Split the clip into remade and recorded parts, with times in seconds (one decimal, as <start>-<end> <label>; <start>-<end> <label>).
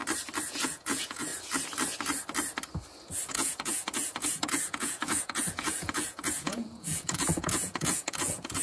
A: 0.0-0.5 recorded; 0.5-1.3 remade; 1.3-3.3 recorded; 3.3-8.6 remade